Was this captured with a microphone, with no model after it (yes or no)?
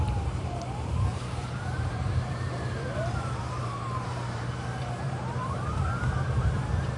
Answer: no